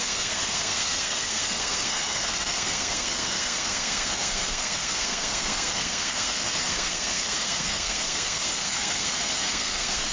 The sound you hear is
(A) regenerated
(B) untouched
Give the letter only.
A